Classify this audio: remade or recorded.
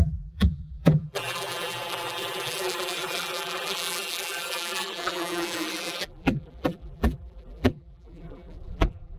remade